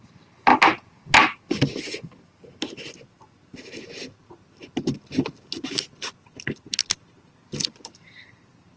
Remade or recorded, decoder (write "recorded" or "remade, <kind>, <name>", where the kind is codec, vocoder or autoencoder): recorded